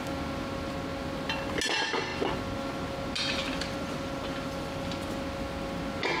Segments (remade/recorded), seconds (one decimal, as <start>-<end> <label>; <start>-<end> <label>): 0.0-3.4 recorded; 3.4-4.9 remade; 4.9-6.2 recorded